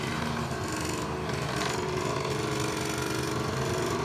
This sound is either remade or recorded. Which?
recorded